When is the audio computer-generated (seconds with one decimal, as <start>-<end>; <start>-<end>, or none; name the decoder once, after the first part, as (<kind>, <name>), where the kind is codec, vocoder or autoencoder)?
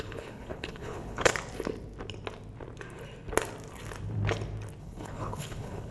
0.0-1.3 (codec, HILCodec); 4.8-5.9